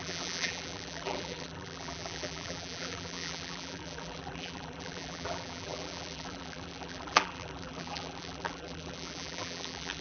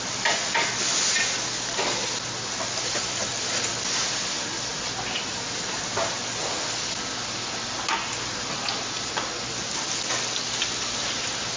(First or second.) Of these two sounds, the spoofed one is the first